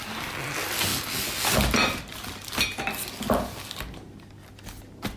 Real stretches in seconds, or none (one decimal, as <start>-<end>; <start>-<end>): 0.0-5.2